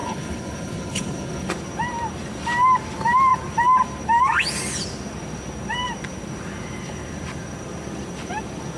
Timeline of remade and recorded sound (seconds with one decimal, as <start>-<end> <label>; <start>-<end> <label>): 0.0-1.5 remade; 1.5-8.8 recorded